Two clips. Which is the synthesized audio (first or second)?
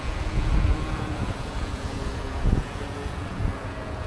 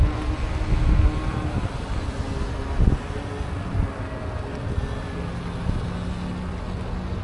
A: first